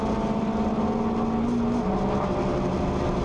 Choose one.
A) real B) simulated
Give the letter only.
A